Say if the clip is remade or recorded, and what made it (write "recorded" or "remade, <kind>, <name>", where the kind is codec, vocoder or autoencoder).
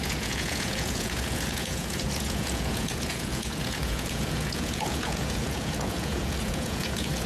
remade, vocoder, Vocos